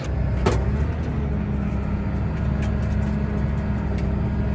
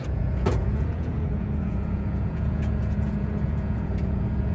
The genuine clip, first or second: first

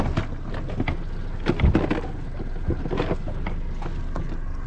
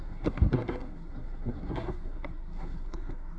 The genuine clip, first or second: first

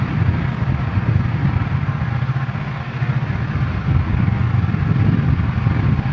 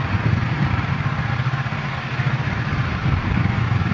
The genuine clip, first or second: first